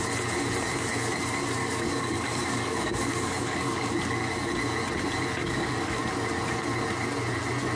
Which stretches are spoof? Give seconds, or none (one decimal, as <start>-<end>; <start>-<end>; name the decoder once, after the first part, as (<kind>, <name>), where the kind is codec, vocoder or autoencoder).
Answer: 1.6-3.9 (codec, DAC); 5.4-6.0